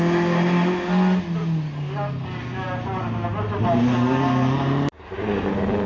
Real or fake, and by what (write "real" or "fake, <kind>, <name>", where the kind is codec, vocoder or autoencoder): real